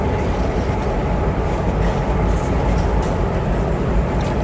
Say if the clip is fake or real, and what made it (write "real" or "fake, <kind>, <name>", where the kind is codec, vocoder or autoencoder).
fake, vocoder, BigVGAN v2